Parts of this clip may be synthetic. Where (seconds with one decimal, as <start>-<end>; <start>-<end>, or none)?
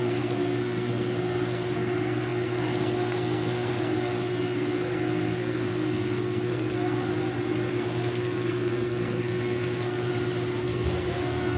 0.0-7.1; 7.7-10.1; 10.6-11.6